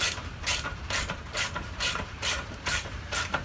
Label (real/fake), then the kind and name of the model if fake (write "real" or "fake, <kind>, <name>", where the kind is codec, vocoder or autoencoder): fake, vocoder, BigVGAN v2